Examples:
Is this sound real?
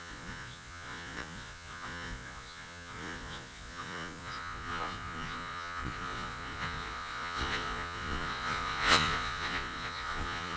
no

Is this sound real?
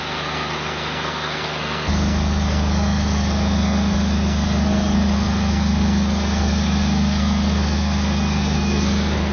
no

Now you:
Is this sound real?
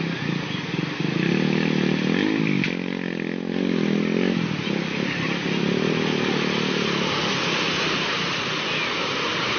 yes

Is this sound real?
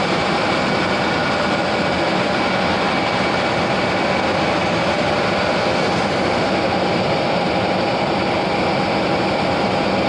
yes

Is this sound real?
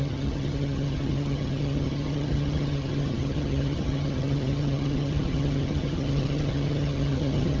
no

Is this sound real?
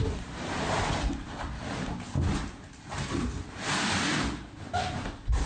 yes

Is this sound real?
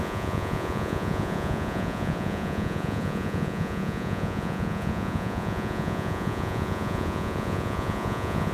no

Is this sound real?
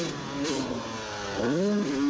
yes